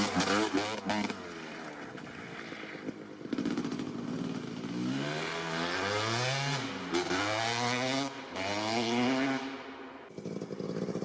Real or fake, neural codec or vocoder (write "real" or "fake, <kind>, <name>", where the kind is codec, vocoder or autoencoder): real